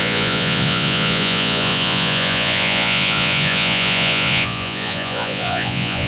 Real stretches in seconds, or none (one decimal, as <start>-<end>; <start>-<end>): none